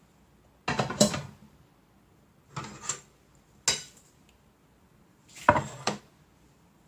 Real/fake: real